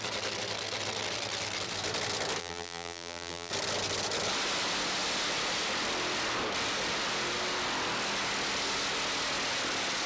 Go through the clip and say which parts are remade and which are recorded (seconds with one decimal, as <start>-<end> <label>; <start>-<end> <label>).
0.0-2.4 recorded; 2.4-3.5 remade; 3.5-10.1 recorded